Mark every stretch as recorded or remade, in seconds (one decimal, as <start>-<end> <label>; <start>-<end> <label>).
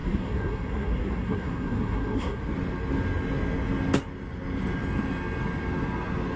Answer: 0.0-2.4 remade; 2.4-6.4 recorded